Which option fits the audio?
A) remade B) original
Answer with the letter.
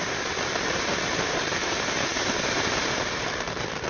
A